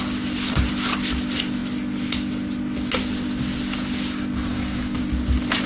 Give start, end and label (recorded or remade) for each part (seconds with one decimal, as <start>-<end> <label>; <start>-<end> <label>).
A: 0.0-4.5 recorded; 4.5-5.0 remade; 5.0-5.7 recorded